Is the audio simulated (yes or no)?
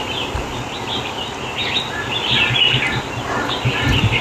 no